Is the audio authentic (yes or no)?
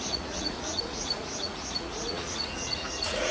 no